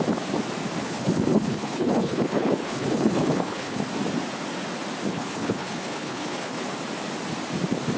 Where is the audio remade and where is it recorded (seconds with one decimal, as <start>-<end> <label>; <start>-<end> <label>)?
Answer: 0.0-0.8 recorded; 0.8-3.8 remade; 3.8-5.1 recorded; 5.1-6.7 remade; 6.7-8.0 recorded